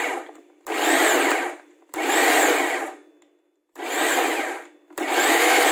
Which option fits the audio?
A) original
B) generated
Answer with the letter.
A